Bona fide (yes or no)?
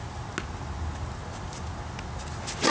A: yes